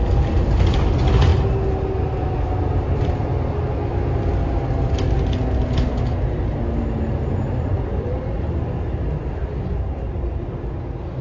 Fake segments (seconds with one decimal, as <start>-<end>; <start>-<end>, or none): none